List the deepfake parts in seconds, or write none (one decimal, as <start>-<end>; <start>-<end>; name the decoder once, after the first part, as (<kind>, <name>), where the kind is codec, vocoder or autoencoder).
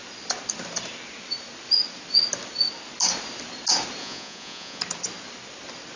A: 4.0-4.8 (vocoder, Vocos)